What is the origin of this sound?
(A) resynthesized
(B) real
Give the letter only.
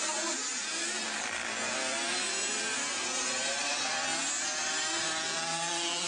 B